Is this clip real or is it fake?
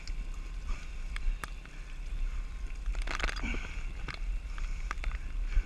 real